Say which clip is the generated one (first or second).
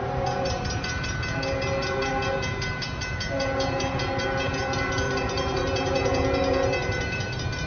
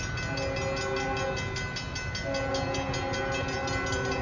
first